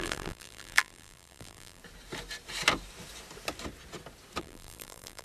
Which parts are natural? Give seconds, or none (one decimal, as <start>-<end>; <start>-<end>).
1.8-4.4